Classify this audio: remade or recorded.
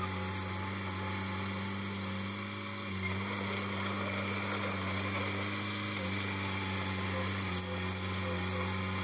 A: recorded